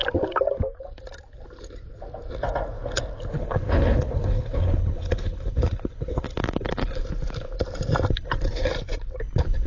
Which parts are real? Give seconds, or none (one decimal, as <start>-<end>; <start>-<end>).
0.0-3.3; 7.0-8.1; 8.7-9.2